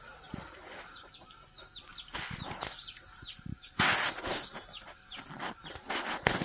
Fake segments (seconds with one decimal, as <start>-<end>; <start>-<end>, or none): none